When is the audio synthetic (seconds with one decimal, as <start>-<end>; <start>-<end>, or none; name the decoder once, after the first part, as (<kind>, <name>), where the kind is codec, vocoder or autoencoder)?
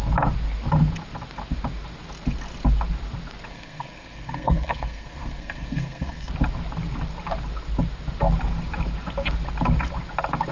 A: 3.5-6.3 (codec, SNAC)